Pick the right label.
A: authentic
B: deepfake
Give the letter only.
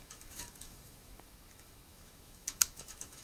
B